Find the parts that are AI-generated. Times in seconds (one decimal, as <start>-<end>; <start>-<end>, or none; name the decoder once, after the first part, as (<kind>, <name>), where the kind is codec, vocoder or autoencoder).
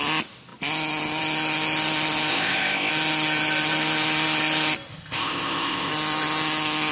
2.3-2.9 (codec, ZipCodec); 4.9-5.9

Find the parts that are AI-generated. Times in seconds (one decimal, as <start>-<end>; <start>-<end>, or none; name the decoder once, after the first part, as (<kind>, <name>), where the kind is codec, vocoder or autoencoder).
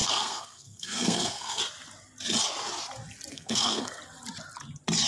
0.0-1.6 (codec, SNAC); 3.3-4.0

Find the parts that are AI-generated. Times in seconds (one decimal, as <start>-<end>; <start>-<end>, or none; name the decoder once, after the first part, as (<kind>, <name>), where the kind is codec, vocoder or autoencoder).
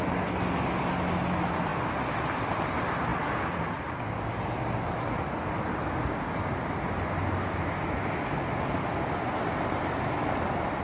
3.1-5.4 (vocoder, BigVGAN v2)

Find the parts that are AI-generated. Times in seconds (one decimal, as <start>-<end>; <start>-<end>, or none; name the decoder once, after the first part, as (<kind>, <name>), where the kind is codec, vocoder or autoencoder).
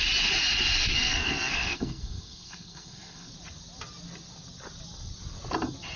0.8-3.3 (codec, SNAC)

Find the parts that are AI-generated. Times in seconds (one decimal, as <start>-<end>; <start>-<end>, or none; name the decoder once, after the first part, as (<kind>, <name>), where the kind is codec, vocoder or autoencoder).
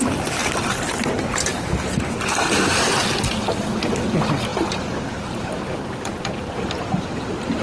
0.4-0.9 (vocoder, BigVGAN v2); 4.5-7.1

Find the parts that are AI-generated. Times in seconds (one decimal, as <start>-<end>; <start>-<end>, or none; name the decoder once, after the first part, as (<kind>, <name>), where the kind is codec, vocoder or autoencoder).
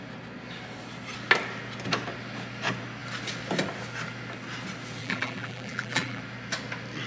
5.0-6.2 (vocoder, BigVGAN v2)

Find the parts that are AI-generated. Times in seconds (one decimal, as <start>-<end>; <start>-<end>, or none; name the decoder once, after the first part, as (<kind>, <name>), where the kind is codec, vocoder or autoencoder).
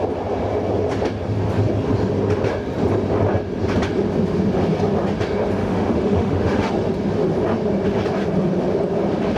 5.6-6.7 (autoencoder, DAC-VAE)